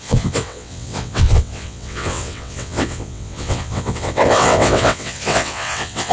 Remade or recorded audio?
remade